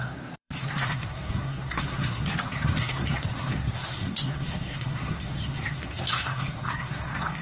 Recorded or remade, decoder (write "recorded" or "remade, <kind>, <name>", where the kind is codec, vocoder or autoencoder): remade, codec, SNAC